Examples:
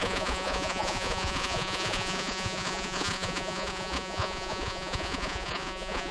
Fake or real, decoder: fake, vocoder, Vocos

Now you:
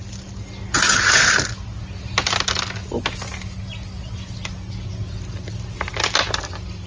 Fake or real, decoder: real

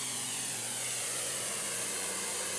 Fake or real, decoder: fake, vocoder, Vocos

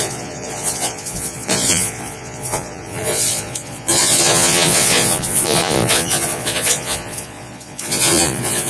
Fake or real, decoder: fake, vocoder, Vocos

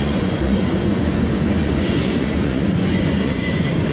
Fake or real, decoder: fake, vocoder, Vocos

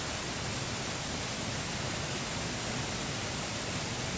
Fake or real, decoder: real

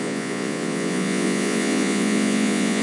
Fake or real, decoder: fake, vocoder, Vocos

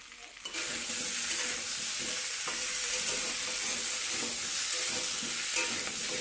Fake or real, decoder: real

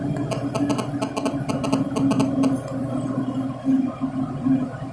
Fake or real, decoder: real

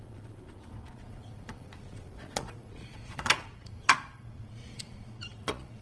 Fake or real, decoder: fake, vocoder, Vocos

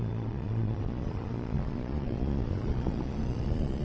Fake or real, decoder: fake, vocoder, Vocos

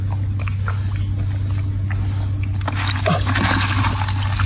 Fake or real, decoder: real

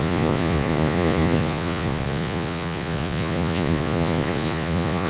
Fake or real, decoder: fake, vocoder, Vocos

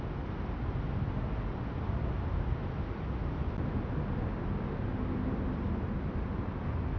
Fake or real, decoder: real